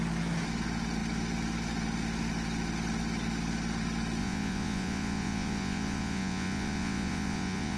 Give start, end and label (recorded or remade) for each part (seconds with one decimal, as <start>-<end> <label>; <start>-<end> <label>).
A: 0.0-4.2 recorded; 4.2-7.8 remade